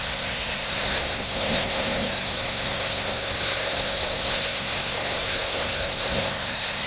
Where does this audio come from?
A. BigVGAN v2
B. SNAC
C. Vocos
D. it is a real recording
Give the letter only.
B